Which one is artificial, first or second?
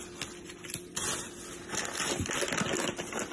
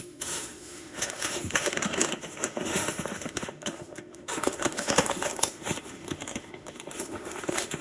second